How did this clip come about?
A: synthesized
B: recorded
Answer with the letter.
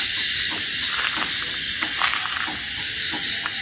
B